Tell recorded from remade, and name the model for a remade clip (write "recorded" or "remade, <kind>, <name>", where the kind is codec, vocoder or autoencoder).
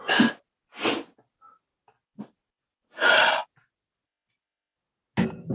recorded